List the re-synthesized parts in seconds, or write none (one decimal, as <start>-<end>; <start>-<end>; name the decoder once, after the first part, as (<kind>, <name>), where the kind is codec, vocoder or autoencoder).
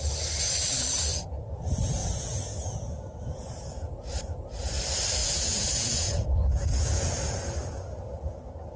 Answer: 2.0-4.1 (vocoder, Vocos); 5.2-7.1